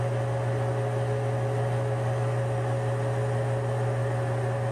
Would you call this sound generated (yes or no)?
no